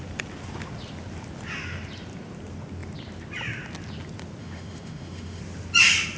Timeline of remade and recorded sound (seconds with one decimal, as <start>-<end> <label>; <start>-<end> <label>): 0.0-4.4 recorded; 4.4-5.4 remade; 5.4-6.2 recorded